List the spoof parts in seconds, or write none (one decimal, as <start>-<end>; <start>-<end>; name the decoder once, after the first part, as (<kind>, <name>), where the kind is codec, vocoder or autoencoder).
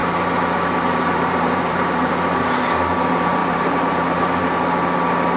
0.0-2.1 (vocoder, BigVGAN v2); 3.4-4.5